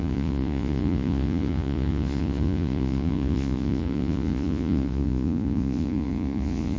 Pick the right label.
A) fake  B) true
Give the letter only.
A